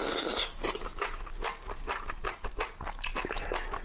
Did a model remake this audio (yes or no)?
no